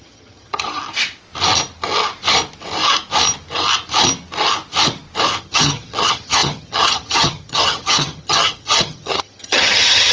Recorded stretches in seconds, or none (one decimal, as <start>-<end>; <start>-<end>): 0.8-5.4